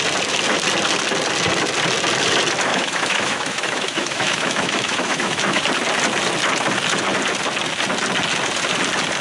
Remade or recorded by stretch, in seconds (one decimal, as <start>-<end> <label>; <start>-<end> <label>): 0.0-2.7 recorded; 2.7-5.6 remade; 5.6-9.2 recorded